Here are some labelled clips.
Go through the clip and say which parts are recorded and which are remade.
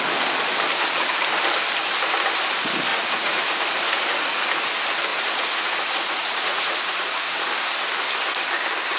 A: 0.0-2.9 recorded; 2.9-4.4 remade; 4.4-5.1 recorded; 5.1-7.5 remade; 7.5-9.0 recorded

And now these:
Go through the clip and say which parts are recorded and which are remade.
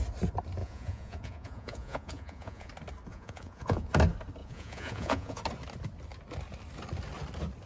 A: 0.0-0.6 recorded; 0.6-2.7 remade; 2.7-3.1 recorded; 3.1-3.9 remade; 3.9-4.4 recorded; 4.4-5.4 remade; 5.4-7.7 recorded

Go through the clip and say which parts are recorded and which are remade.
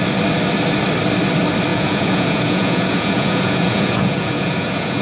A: 0.0-1.7 recorded; 1.7-5.0 remade